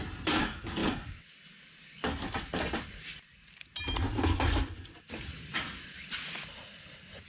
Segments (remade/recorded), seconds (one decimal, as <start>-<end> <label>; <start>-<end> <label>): 0.0-7.3 recorded